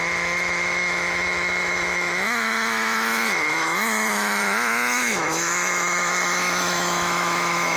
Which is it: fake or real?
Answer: fake